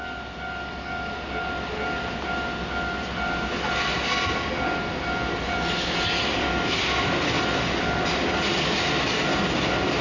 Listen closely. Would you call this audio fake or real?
real